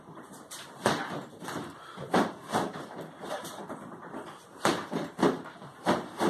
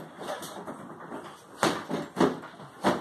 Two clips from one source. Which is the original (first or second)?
second